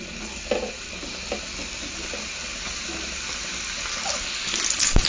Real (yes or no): yes